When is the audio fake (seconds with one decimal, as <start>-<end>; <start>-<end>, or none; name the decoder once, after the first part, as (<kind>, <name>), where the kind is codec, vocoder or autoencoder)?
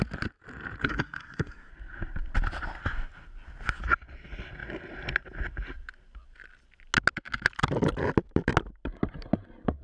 0.8-1.7 (codec, SNAC)